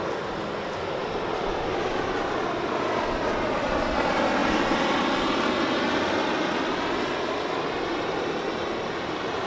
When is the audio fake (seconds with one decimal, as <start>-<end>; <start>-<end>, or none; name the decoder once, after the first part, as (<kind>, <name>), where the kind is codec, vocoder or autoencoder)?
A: none